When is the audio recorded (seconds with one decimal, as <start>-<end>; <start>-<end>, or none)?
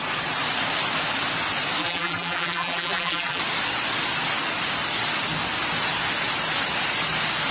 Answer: 0.0-1.8; 3.4-7.5